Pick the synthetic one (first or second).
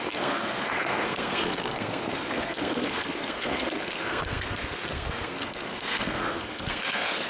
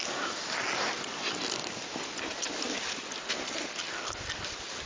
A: first